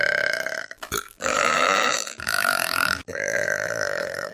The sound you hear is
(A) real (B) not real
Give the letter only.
B